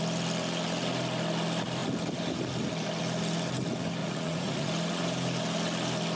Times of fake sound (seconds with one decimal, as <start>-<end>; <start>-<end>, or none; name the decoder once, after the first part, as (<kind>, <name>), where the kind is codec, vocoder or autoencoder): 4.0-4.7 (vocoder, Vocos)